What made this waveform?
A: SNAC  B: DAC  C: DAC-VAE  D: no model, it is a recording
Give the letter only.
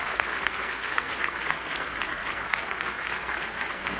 A